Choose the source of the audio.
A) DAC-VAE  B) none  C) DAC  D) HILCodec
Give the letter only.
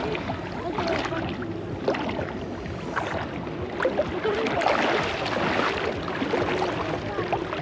B